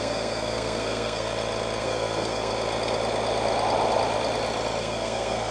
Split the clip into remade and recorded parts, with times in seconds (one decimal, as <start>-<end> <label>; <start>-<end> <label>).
0.0-1.3 remade; 1.3-1.8 recorded; 1.8-2.5 remade; 2.5-4.8 recorded; 4.8-5.5 remade